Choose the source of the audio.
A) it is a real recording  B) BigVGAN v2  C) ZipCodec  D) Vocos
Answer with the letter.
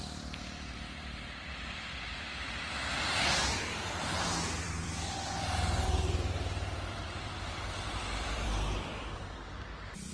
B